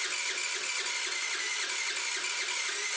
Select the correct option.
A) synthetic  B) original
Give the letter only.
B